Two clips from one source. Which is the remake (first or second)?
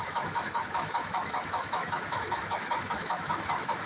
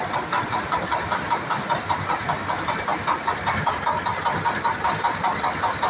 first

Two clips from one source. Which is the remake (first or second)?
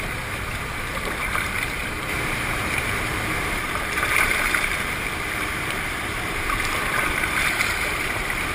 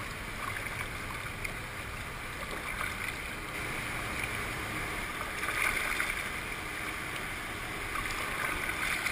first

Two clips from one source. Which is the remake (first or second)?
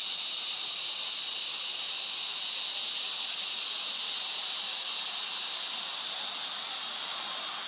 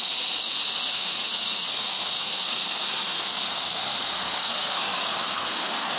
second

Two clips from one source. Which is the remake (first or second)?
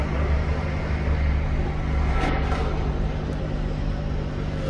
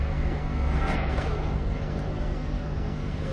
second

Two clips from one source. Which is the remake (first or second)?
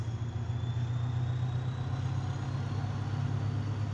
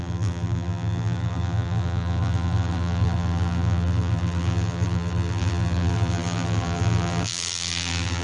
second